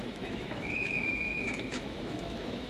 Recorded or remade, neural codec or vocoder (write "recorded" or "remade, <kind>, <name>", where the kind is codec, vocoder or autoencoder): remade, autoencoder, DAC-VAE